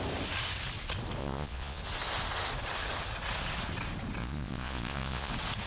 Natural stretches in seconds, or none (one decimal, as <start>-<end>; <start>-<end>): 0.0-1.2; 1.8-4.2; 5.3-5.7